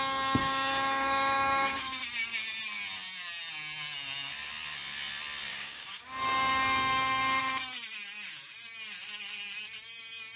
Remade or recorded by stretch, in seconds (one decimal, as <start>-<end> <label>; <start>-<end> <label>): 0.0-0.4 recorded; 0.4-2.0 remade; 2.0-5.5 recorded; 5.5-7.4 remade; 7.4-10.4 recorded